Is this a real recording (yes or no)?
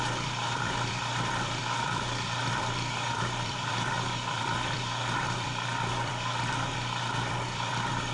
no